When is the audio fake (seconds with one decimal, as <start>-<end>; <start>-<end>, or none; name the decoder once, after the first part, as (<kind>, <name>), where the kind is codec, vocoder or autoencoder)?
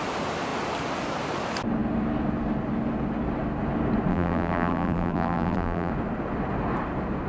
4.1-5.9 (vocoder, BigVGAN v2)